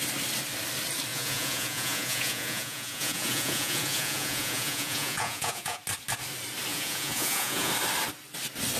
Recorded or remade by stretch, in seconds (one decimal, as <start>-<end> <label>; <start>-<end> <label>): 0.0-1.1 recorded; 1.1-5.8 remade; 5.8-6.7 recorded; 6.7-7.7 remade; 7.7-8.8 recorded